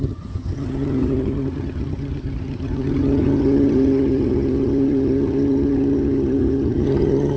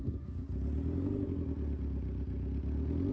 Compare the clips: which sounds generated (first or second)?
first